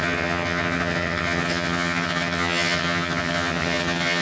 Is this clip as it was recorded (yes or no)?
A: no